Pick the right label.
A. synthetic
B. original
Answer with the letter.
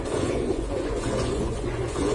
A